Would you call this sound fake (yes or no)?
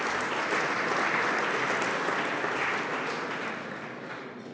no